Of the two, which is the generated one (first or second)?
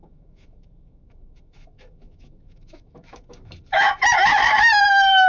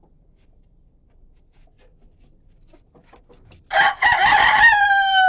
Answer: first